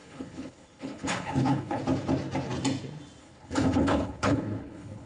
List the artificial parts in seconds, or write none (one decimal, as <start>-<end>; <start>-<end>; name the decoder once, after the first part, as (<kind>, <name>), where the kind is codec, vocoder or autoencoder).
0.0-1.8 (codec, HILCodec); 3.2-5.1

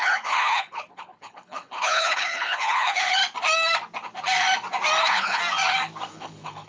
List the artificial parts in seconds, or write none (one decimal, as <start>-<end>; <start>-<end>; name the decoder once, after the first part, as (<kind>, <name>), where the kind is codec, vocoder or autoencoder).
0.0-3.2 (codec, HILCodec); 5.0-5.4; 6.1-6.7

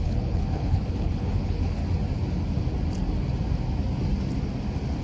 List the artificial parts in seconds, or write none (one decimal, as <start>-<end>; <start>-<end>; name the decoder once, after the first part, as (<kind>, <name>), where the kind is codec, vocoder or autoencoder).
0.0-1.8 (codec, HILCodec)

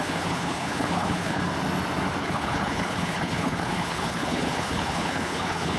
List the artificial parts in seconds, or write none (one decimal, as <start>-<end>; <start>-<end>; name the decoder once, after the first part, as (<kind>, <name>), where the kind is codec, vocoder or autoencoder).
0.0-1.4 (codec, HILCodec); 2.2-5.8

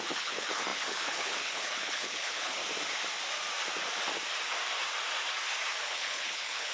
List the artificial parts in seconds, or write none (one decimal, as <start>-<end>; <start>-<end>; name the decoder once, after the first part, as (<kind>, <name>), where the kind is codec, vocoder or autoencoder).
0.0-2.6 (codec, HILCodec); 5.8-6.7

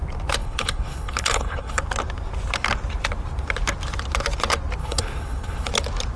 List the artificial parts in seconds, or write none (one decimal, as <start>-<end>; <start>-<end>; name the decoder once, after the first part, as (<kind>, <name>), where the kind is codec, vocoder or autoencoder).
0.4-1.8 (codec, HILCodec); 4.8-5.7

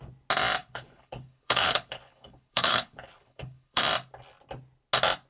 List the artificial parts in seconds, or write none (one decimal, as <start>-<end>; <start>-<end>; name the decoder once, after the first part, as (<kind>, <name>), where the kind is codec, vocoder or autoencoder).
0.6-3.8 (codec, HILCodec)

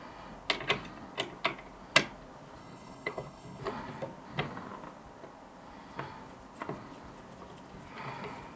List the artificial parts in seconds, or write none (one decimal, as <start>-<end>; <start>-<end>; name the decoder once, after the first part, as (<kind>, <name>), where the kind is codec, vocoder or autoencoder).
2.6-3.6 (codec, HILCodec)